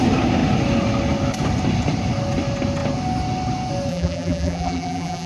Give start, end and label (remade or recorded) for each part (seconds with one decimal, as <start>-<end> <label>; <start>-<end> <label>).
0.0-3.9 recorded; 3.9-5.3 remade